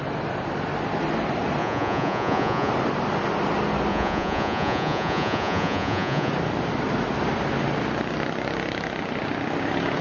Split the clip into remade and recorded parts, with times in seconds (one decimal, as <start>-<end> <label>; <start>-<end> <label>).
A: 0.0-1.6 recorded; 1.6-2.7 remade; 2.7-3.9 recorded; 3.9-6.3 remade; 6.3-10.0 recorded